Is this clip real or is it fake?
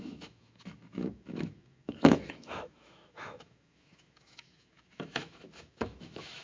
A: fake